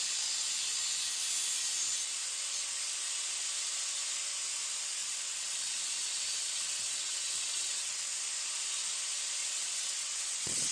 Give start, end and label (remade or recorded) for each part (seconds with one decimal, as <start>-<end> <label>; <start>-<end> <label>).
0.0-5.0 recorded; 5.0-8.2 remade; 8.2-9.4 recorded; 9.4-10.7 remade